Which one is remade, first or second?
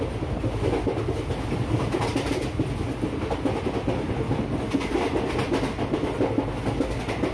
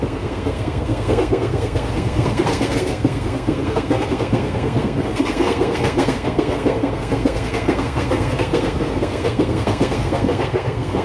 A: second